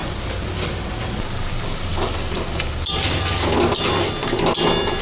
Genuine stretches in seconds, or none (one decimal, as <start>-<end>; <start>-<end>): 0.0-5.0